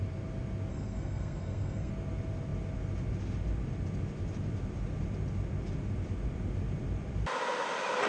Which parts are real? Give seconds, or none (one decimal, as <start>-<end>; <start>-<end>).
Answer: 0.0-0.7; 1.9-8.1